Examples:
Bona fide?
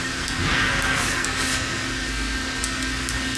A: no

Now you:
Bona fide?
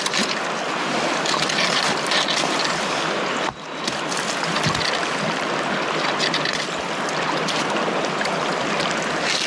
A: yes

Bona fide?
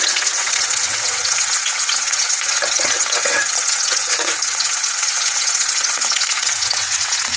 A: no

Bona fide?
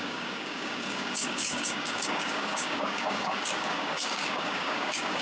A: no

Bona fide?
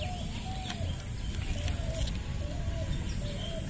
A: yes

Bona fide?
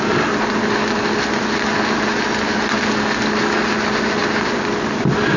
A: yes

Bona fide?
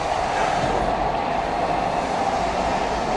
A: yes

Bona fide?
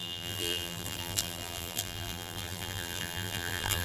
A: no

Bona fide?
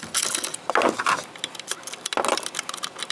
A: yes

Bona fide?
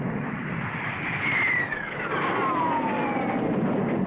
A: yes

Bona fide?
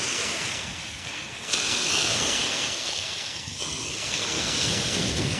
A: no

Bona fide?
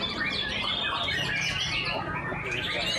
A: yes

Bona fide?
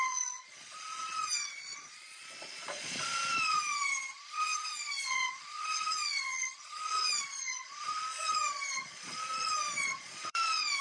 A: no